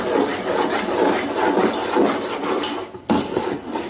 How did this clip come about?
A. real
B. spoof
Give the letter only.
A